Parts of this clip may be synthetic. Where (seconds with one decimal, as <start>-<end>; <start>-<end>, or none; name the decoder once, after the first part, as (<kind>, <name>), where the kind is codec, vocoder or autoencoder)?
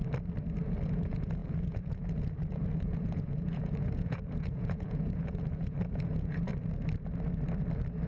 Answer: 0.9-6.5 (vocoder, Vocos)